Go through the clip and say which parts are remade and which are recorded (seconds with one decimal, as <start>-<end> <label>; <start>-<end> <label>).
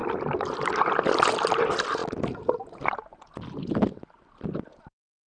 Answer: 0.0-5.3 recorded